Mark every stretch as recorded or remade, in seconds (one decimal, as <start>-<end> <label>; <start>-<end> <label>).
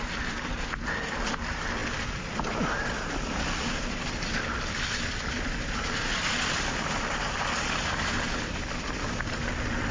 0.0-9.9 recorded